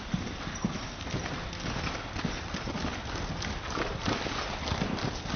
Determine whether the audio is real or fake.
real